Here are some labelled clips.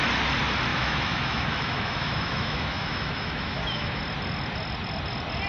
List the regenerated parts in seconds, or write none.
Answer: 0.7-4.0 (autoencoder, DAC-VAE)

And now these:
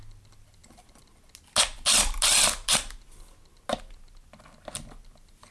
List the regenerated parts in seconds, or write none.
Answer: none

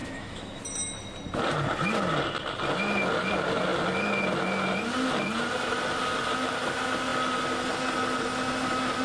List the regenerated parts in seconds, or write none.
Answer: 0.0-0.6 (autoencoder, DAC-VAE)

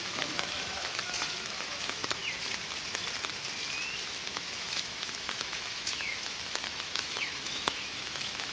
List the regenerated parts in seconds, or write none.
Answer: 0.0-2.2 (autoencoder, DAC-VAE); 4.3-8.5

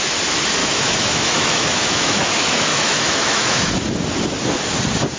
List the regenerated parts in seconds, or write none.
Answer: 0.6-3.7 (autoencoder, DAC-VAE)